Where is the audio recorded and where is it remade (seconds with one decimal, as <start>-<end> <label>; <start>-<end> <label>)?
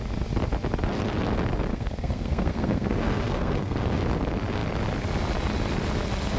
0.0-1.7 recorded; 1.7-4.0 remade; 4.0-6.4 recorded